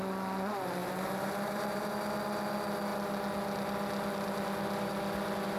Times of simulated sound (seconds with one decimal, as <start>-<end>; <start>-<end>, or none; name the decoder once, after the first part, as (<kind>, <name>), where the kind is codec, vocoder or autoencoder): 0.8-1.9 (vocoder, BigVGAN v2)

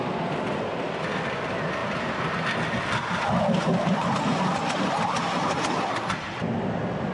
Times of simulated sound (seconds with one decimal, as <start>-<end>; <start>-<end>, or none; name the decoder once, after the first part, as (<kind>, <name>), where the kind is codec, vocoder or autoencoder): none